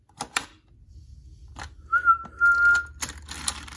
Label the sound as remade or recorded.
recorded